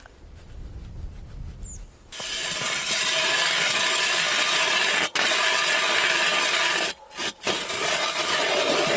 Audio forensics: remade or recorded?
recorded